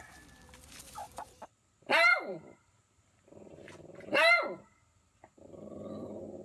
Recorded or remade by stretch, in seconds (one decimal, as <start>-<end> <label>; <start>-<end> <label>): 0.0-1.0 recorded; 1.0-4.6 remade; 4.6-6.4 recorded